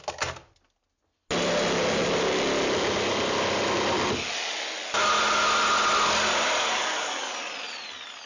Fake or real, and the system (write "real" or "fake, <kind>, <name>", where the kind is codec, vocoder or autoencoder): real